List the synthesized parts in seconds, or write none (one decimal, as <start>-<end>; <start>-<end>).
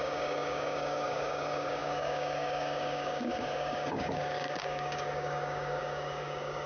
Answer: 0.0-6.7